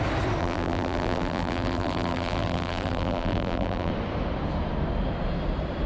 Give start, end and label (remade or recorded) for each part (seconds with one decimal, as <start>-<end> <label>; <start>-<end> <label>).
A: 0.0-0.4 recorded; 0.4-3.9 remade; 3.9-5.9 recorded